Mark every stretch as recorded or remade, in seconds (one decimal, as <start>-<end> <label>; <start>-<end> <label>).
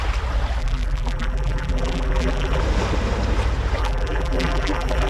0.0-0.6 recorded; 0.6-2.6 remade; 2.6-3.8 recorded; 3.8-5.1 remade